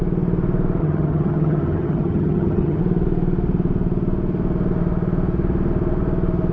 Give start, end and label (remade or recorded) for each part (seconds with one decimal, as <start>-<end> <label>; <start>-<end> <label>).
0.0-0.8 recorded; 0.8-2.8 remade; 2.8-6.5 recorded